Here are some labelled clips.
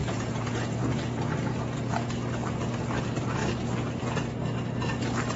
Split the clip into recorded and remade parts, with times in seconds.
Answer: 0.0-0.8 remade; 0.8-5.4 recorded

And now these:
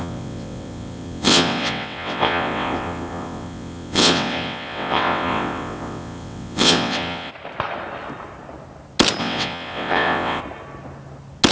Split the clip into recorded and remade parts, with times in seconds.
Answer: 0.0-7.3 remade; 7.3-9.2 recorded; 9.2-10.4 remade; 10.4-11.5 recorded